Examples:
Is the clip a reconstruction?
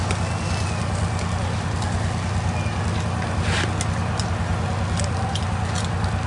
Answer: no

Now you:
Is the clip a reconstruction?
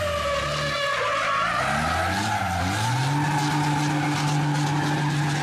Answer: no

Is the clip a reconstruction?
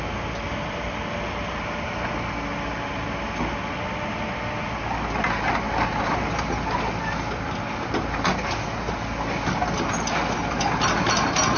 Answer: no